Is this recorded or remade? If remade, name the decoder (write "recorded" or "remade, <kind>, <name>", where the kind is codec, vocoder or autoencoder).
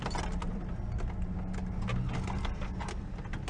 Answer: recorded